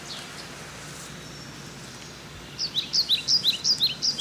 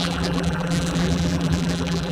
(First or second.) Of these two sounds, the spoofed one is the second